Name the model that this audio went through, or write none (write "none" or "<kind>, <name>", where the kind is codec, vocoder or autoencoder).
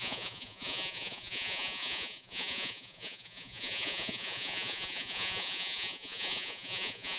vocoder, Vocos